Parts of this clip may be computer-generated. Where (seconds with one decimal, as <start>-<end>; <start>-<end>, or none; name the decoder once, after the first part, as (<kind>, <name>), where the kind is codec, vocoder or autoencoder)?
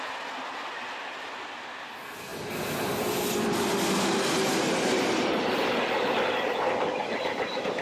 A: none